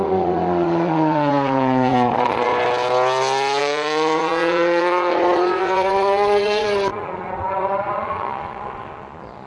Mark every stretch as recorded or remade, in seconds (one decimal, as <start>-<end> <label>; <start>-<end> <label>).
0.0-2.5 remade; 2.5-3.6 recorded; 3.6-9.5 remade